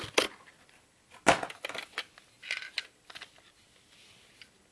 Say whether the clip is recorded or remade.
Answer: recorded